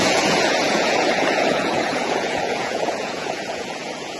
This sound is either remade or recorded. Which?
remade